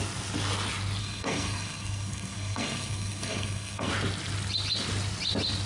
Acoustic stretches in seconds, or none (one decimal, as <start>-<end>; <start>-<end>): 0.0-1.0; 3.9-5.7